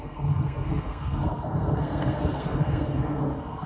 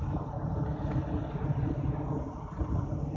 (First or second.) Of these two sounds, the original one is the second